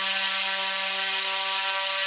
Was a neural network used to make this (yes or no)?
no